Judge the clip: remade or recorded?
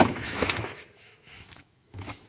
remade